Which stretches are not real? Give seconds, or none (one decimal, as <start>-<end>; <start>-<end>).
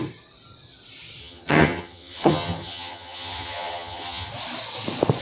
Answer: 1.2-4.3